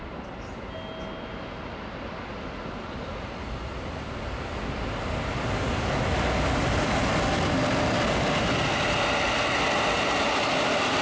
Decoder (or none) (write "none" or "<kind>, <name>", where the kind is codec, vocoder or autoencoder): none